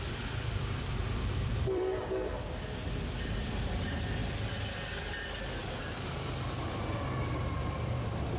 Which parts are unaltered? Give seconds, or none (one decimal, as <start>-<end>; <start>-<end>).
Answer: 4.2-5.8